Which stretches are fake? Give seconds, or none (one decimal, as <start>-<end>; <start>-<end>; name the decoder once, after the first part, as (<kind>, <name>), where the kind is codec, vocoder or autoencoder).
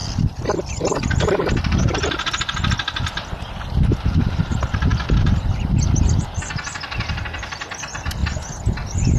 none